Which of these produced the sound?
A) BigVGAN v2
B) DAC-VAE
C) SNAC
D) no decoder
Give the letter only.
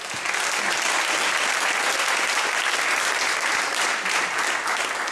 D